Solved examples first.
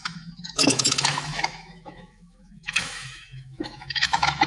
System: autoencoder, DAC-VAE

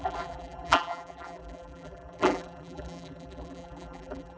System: vocoder, BigVGAN v2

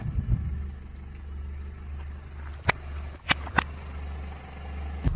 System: none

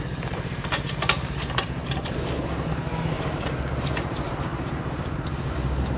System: vocoder, BigVGAN v2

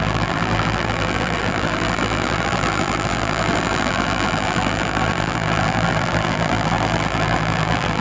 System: vocoder, BigVGAN v2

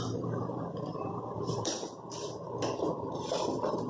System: vocoder, BigVGAN v2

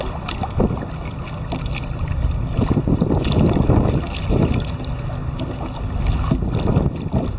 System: none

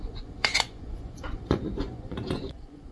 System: vocoder, Vocos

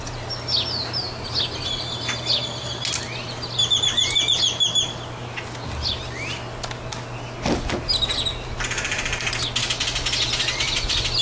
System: none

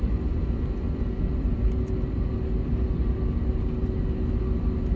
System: none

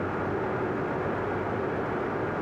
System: none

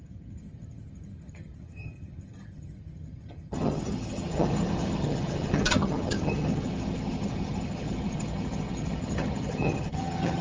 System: vocoder, HiFi-GAN